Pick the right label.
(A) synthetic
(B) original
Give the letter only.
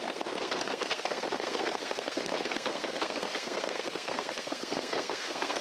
A